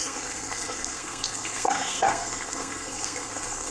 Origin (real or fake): fake